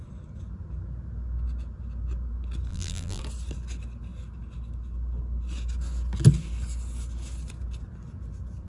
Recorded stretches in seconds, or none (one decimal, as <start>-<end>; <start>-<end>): 0.0-2.7; 3.2-8.7